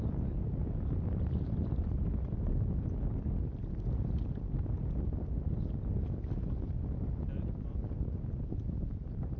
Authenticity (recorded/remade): recorded